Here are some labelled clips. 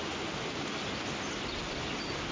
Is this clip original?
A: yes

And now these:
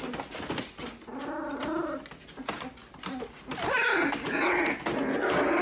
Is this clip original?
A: yes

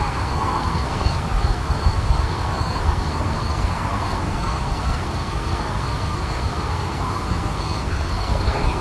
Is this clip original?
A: no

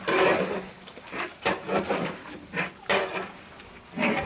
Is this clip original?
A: yes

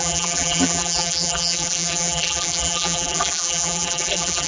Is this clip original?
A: no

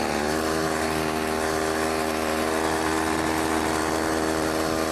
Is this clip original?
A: yes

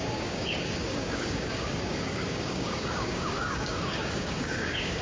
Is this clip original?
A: no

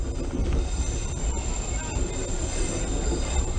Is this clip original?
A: yes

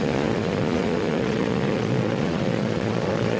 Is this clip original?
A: no